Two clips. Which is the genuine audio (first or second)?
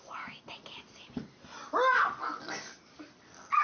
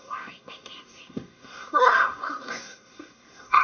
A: first